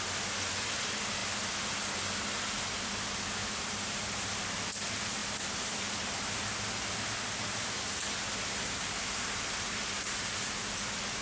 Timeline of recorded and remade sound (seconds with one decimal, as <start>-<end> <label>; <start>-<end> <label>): 0.0-3.4 recorded; 3.4-4.6 remade; 4.6-11.2 recorded